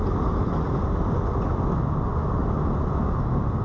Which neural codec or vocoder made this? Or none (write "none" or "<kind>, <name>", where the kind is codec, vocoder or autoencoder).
none